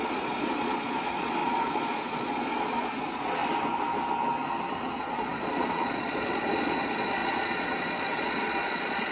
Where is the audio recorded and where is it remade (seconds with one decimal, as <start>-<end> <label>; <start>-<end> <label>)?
0.0-3.4 remade; 3.4-5.0 recorded; 5.0-9.1 remade